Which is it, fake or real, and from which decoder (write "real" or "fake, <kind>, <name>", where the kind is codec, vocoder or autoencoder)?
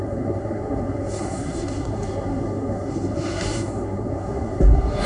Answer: fake, codec, SNAC